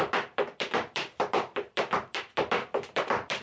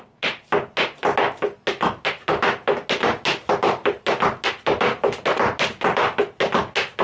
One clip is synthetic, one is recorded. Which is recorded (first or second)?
second